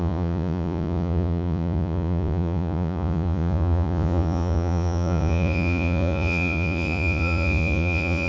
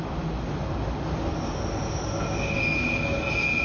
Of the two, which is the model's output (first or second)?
first